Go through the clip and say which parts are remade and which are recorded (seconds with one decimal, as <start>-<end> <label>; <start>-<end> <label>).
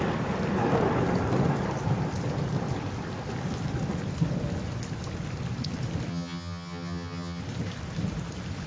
0.0-6.1 recorded; 6.1-7.4 remade; 7.4-8.7 recorded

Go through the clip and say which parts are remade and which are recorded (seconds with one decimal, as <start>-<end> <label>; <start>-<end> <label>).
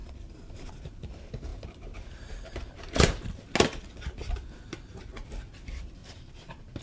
0.0-0.7 remade; 0.7-6.0 recorded; 6.0-6.8 remade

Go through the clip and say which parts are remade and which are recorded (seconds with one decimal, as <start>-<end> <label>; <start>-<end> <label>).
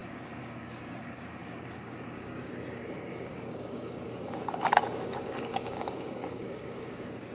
0.0-7.3 remade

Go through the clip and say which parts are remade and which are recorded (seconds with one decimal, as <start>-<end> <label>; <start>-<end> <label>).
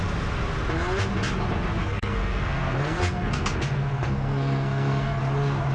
0.0-1.8 recorded; 1.8-5.2 remade; 5.2-5.7 recorded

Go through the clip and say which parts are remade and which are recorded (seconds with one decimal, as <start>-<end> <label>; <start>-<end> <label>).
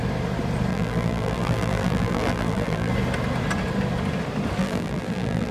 0.0-0.7 recorded; 0.7-2.9 remade; 2.9-4.6 recorded; 4.6-5.5 remade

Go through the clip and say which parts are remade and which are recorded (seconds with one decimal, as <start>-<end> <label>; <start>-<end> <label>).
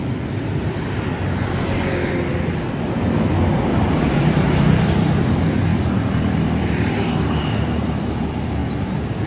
0.0-3.7 recorded; 3.7-5.2 remade; 5.2-5.7 recorded; 5.7-7.4 remade; 7.4-8.6 recorded; 8.6-9.3 remade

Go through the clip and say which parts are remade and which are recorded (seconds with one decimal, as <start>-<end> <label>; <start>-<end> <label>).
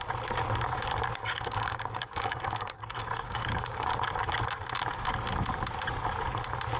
0.0-1.2 recorded; 1.2-3.9 remade; 3.9-6.8 recorded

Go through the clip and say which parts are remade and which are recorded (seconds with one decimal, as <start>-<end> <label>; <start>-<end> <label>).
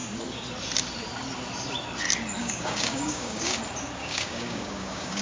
0.0-2.4 recorded; 2.4-3.6 remade; 3.6-4.0 recorded; 4.0-5.2 remade